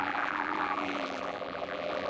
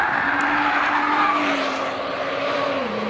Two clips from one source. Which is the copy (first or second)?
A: first